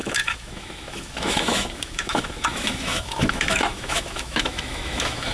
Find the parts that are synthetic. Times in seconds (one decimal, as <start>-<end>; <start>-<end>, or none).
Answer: 0.0-5.3